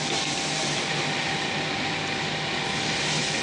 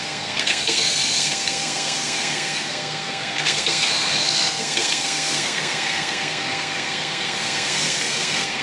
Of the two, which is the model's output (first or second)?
second